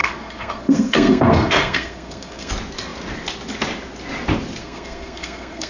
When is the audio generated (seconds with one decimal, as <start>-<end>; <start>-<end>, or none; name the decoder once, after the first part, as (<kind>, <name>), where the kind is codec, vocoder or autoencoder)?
0.0-2.5 (codec, SNAC); 4.6-5.7